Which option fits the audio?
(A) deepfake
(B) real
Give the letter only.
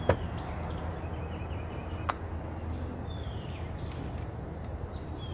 B